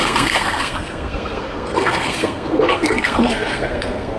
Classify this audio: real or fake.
fake